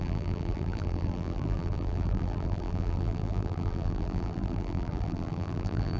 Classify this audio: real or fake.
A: fake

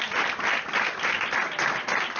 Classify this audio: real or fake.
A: real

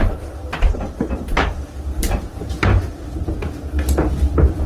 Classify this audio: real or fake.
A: fake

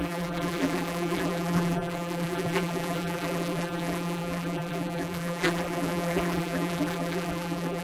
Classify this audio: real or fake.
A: fake